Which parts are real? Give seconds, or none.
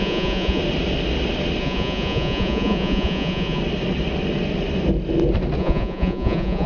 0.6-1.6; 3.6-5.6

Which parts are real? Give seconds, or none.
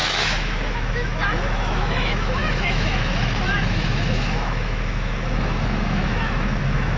none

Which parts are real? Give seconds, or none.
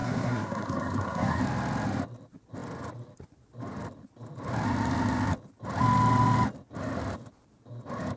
1.4-8.2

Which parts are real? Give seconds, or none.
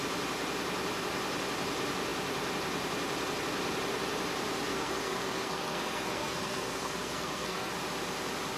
0.0-4.7; 7.7-8.6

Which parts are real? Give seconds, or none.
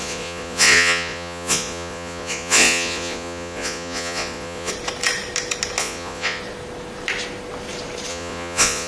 4.7-5.8; 6.4-8.1